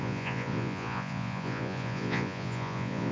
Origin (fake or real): fake